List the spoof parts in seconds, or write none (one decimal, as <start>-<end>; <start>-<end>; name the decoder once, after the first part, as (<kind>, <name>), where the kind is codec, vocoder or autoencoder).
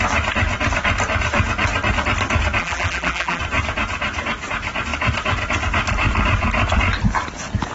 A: 2.6-3.4 (vocoder, BigVGAN v2)